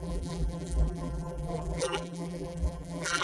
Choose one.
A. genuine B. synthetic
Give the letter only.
B